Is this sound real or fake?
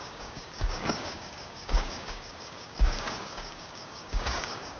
fake